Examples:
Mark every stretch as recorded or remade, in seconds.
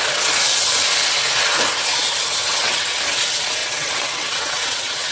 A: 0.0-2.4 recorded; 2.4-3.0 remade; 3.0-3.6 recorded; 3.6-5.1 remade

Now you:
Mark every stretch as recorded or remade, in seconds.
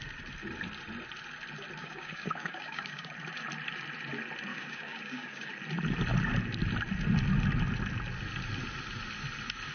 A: 0.0-1.8 recorded; 1.8-3.1 remade; 3.1-4.5 recorded; 4.5-5.5 remade; 5.5-9.7 recorded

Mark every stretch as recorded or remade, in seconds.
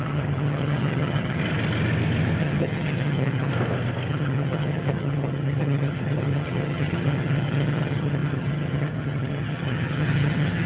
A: 0.0-1.4 remade; 1.4-2.4 recorded; 2.4-3.5 remade; 3.5-4.1 recorded; 4.1-10.7 remade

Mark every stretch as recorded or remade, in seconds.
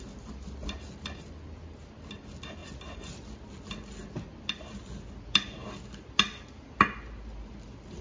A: 0.0-8.0 recorded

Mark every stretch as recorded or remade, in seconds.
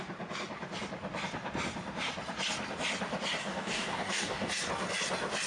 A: 0.0-3.4 recorded; 3.4-4.5 remade; 4.5-5.5 recorded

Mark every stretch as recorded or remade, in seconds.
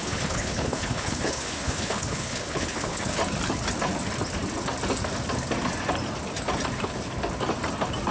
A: 0.0-3.2 remade; 3.2-8.1 recorded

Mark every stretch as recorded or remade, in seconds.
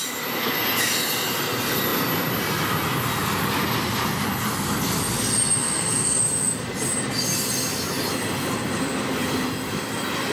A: 0.0-5.6 recorded; 5.6-6.2 remade; 6.2-10.3 recorded